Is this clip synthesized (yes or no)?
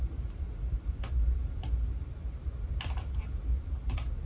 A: no